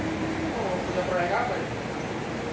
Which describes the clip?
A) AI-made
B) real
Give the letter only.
B